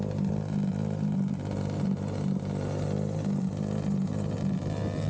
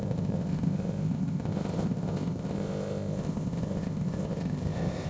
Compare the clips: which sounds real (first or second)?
first